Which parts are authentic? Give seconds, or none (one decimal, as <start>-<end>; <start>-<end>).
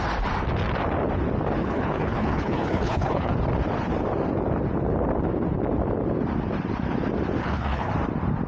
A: 0.0-1.6; 3.3-7.4; 7.9-8.5